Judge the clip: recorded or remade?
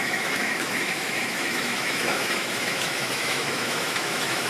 remade